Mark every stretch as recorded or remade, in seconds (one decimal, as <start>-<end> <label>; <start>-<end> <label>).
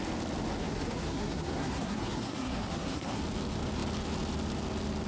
0.0-0.6 recorded; 0.6-3.2 remade; 3.2-5.1 recorded